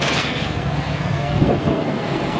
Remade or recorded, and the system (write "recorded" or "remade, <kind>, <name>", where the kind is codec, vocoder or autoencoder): remade, codec, SNAC